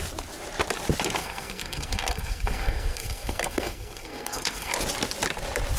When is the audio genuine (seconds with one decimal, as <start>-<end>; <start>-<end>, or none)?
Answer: 0.0-1.2; 4.7-5.8